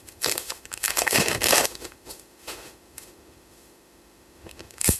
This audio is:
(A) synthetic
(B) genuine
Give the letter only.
A